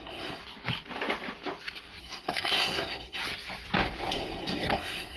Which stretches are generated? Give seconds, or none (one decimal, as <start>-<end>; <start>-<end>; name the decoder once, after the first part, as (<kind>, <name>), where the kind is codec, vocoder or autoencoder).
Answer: 0.0-0.4 (codec, SNAC); 2.0-3.2; 4.1-5.2